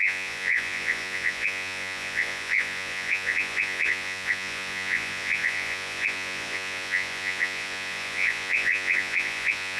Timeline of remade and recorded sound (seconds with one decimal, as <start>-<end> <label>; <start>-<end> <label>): 0.0-9.8 remade